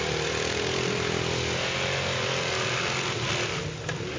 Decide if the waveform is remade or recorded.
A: recorded